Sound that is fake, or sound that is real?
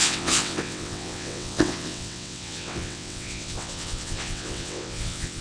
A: fake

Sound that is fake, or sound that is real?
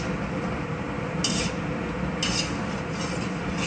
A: real